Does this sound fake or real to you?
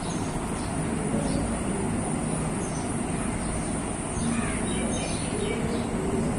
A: real